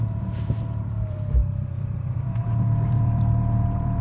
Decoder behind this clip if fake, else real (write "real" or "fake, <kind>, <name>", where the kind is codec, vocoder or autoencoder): fake, vocoder, BigVGAN v2